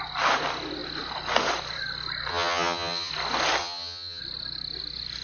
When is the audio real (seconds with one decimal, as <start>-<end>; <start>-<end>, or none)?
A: 0.0-2.3; 3.1-3.6; 4.2-5.2